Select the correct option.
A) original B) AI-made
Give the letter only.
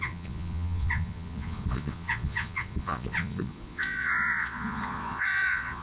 B